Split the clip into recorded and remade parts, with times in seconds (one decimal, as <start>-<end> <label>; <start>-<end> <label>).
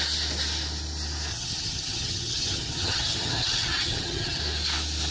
0.0-1.3 recorded; 1.3-4.4 remade; 4.4-5.1 recorded